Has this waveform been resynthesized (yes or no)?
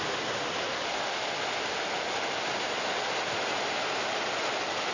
no